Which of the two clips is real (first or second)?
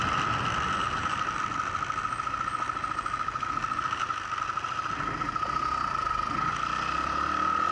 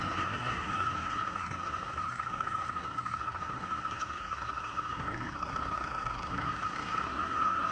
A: first